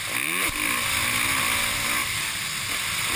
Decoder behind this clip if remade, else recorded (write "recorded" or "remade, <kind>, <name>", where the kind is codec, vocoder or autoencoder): recorded